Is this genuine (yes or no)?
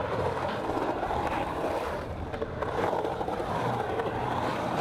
no